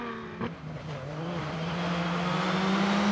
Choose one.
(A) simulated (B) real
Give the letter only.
B